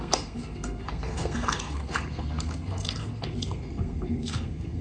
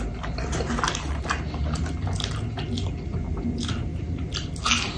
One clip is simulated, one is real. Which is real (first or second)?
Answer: second